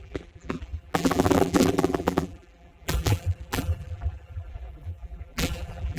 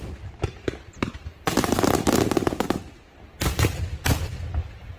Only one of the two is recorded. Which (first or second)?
second